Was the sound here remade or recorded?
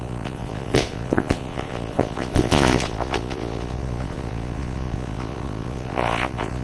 remade